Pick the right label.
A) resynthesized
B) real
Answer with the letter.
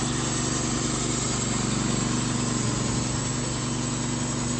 B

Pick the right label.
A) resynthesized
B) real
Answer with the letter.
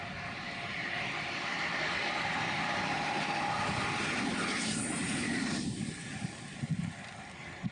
B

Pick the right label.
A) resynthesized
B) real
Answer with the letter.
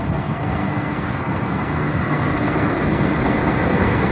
A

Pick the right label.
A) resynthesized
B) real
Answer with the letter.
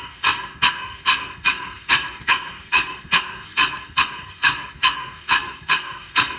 A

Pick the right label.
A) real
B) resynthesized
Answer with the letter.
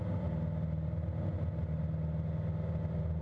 A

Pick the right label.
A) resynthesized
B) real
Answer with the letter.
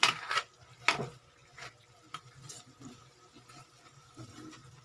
B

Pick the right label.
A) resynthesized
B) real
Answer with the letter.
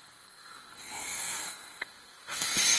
A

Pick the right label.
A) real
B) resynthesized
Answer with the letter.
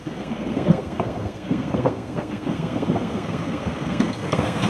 B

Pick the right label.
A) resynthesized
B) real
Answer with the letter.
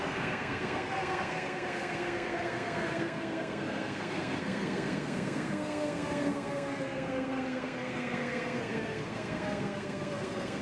A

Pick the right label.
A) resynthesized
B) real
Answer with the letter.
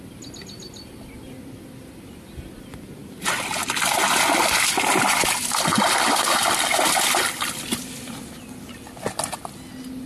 B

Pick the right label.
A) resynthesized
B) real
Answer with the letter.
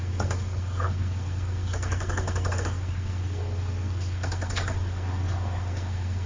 A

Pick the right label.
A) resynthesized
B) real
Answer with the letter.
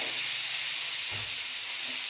B